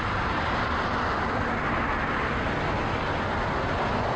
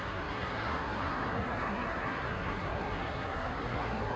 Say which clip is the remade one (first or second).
second